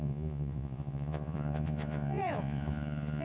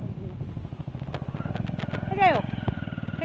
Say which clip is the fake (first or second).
first